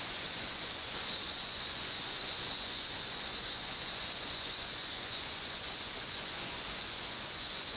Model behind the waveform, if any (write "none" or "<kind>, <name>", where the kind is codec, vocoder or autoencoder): vocoder, Vocos